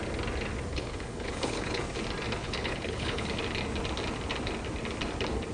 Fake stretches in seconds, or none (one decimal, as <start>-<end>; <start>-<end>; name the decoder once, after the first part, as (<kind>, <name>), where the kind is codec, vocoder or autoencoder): 0.7-1.8 (codec, HILCodec); 2.4-3.3